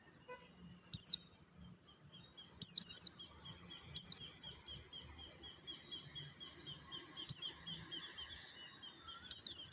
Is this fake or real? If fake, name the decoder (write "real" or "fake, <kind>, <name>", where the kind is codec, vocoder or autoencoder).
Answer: real